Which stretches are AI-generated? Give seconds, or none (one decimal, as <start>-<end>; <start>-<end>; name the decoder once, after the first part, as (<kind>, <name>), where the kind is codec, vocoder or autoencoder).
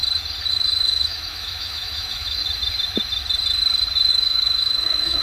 0.5-2.4 (autoencoder, DAC-VAE); 4.1-5.2